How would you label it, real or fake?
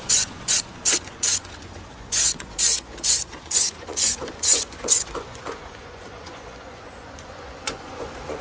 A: fake